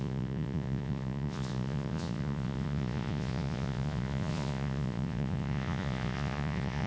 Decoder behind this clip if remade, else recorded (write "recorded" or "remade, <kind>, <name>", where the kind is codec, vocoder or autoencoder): remade, vocoder, Vocos